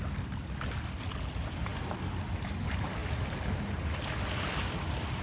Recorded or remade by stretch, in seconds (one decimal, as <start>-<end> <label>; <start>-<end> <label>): 0.0-5.2 recorded